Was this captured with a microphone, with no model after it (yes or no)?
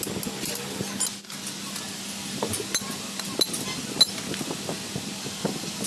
yes